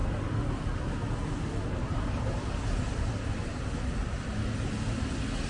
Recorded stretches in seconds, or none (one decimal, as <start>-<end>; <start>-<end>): 0.0-5.5